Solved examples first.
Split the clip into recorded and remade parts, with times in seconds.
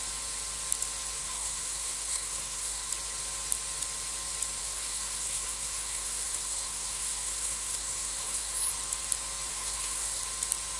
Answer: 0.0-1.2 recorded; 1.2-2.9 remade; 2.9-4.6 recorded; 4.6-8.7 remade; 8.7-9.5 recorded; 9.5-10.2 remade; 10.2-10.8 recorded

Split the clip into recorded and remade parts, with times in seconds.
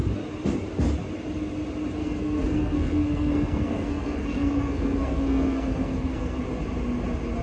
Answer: 0.0-2.0 recorded; 2.0-6.4 remade; 6.4-7.4 recorded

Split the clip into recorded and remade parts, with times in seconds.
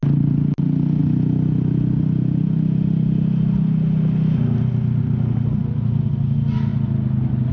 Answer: 0.0-7.5 recorded